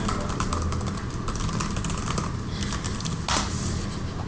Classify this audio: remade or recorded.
recorded